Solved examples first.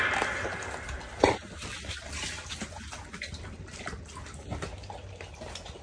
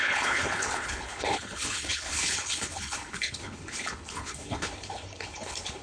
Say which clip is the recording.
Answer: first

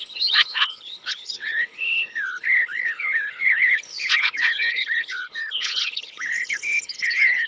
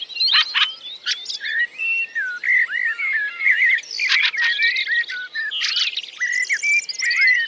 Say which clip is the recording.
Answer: second